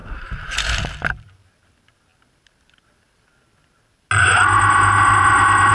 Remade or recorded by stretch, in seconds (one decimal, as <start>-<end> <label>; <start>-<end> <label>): 0.0-5.7 recorded